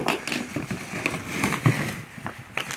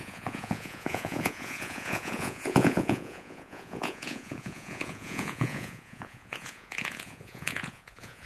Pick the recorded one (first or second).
first